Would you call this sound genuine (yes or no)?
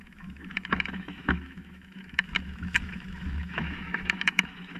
no